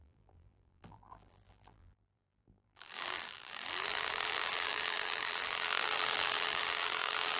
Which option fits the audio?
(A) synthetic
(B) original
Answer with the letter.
A